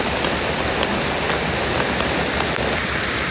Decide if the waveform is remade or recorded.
recorded